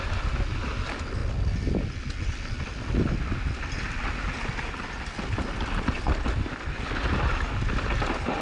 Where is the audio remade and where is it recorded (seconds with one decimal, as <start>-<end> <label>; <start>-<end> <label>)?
0.0-8.4 recorded